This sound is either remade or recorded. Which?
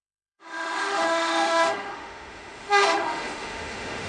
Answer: remade